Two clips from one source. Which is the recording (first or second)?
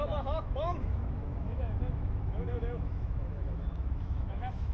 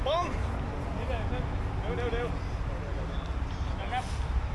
second